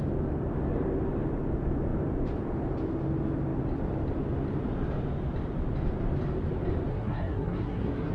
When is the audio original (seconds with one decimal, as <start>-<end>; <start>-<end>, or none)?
0.0-6.9